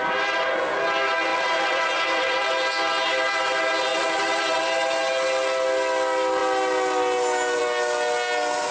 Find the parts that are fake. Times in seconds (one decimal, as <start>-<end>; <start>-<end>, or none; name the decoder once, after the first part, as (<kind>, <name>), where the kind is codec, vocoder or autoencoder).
1.3-2.5 (vocoder, BigVGAN v2); 3.9-4.6

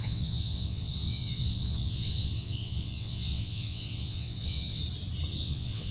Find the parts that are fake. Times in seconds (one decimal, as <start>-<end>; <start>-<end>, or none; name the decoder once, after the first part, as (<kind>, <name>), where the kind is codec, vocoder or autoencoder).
0.0-4.8 (vocoder, WaveNeXt); 5.4-5.9

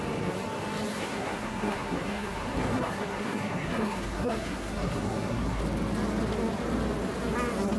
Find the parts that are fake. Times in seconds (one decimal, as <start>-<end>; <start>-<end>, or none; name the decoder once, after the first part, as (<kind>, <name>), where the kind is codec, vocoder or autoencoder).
0.9-5.6 (codec, SNAC)

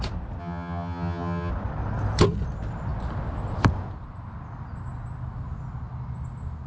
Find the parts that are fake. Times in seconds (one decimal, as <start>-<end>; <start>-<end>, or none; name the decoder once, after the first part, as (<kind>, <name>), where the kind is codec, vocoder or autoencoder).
0.4-1.5 (vocoder, HiFi-GAN)

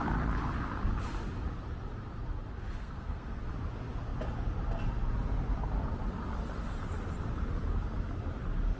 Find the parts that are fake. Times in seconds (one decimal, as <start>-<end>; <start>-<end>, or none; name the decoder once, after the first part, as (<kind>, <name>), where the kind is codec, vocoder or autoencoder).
2.8-3.4 (codec, SNAC)

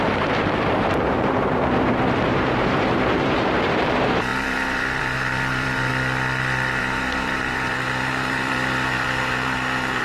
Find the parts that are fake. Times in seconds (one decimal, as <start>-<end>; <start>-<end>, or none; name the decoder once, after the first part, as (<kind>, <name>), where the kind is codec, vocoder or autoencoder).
0.0-5.9 (vocoder, BigVGAN v2); 6.8-10.0